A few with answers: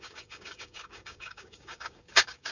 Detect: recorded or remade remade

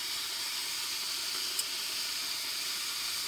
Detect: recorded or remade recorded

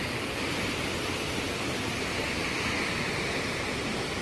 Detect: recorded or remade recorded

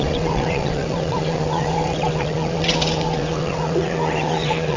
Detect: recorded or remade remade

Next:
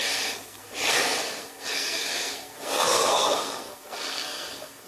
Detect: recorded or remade remade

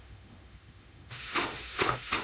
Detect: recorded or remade remade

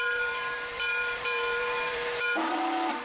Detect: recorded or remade remade